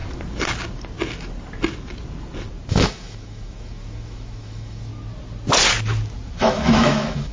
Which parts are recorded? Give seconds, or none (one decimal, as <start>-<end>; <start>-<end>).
0.0-2.7; 4.9-6.4